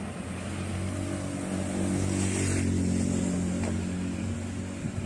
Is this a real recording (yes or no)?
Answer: yes